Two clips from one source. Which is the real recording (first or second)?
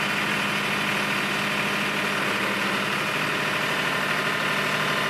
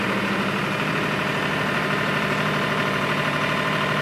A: first